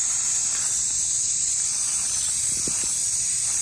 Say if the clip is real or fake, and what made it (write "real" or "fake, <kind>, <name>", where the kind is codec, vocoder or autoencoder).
fake, vocoder, BigVGAN v2